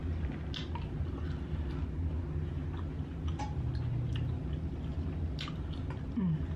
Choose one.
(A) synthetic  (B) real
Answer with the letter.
B